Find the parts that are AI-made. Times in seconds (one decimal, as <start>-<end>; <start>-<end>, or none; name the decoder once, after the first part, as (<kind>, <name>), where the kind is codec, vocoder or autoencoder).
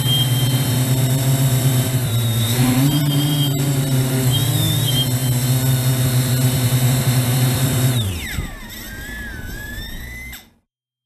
0.0-5.2 (vocoder, BigVGAN v2); 5.9-11.1